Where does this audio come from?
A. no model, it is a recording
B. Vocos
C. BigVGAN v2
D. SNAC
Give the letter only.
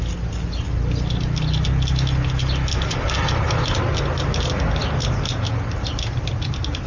A